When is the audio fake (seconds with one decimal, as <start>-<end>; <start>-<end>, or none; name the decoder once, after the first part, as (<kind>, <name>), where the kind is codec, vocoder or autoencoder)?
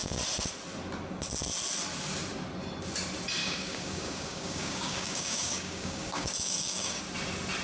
3.4-7.0 (codec, DAC)